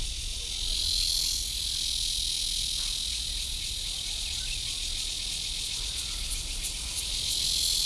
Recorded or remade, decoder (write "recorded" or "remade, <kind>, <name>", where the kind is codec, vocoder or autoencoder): recorded